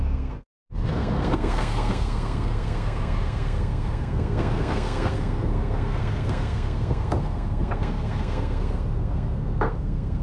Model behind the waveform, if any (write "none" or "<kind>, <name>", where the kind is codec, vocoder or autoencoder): codec, SNAC